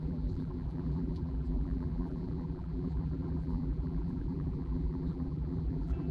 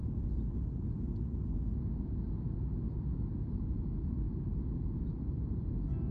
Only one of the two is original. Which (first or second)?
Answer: second